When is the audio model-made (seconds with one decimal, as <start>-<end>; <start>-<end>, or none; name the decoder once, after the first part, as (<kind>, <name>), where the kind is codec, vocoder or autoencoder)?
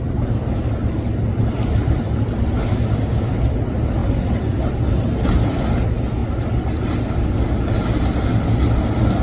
2.7-3.3 (codec, DAC)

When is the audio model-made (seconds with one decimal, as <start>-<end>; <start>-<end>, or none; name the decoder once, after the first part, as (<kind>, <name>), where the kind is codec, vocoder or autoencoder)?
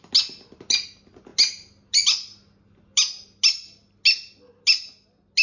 none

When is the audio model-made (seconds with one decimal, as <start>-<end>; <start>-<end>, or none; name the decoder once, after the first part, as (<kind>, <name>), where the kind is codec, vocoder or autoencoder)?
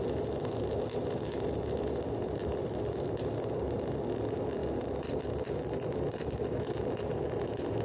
4.6-6.5 (vocoder, BigVGAN v2)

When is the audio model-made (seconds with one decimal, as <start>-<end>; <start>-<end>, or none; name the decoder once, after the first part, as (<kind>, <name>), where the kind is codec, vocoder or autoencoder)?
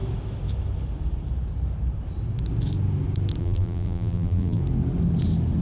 3.4-4.6 (vocoder, BigVGAN v2)